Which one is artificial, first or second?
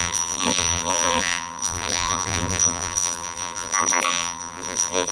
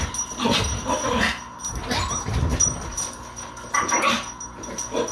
first